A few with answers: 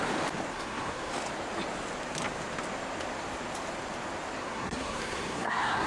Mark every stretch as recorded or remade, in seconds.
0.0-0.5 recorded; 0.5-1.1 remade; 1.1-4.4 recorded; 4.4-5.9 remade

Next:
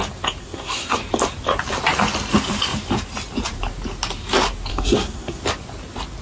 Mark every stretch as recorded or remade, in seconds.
0.0-0.4 recorded; 0.4-1.0 remade; 1.0-4.7 recorded; 4.7-5.4 remade; 5.4-6.2 recorded

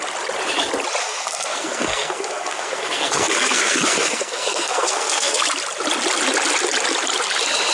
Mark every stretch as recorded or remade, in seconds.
0.0-1.0 recorded; 1.0-5.4 remade; 5.4-7.7 recorded

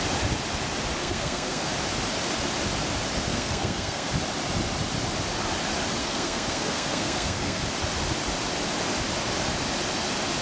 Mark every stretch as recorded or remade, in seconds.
0.0-1.0 recorded; 1.0-1.7 remade; 1.7-3.3 recorded; 3.3-4.1 remade; 4.1-6.0 recorded; 6.0-7.6 remade; 7.6-10.4 recorded

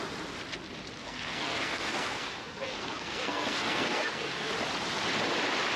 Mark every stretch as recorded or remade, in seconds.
0.0-1.0 recorded; 1.0-4.5 remade; 4.5-5.8 recorded